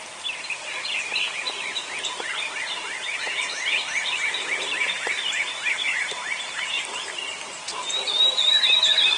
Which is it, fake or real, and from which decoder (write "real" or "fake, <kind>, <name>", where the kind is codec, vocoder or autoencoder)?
real